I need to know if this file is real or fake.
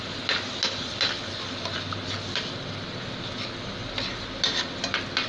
real